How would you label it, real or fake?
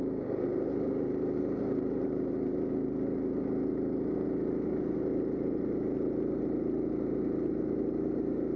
real